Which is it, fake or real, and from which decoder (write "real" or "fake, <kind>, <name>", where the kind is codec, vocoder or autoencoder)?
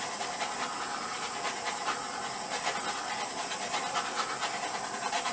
real